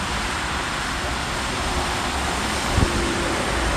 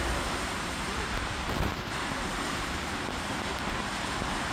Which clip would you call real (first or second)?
first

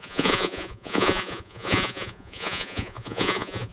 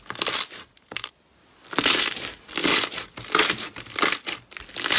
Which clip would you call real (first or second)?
second